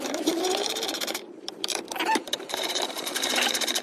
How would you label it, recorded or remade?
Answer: remade